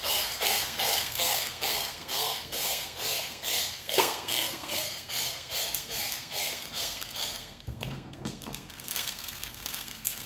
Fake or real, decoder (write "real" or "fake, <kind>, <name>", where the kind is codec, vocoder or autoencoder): fake, codec, SNAC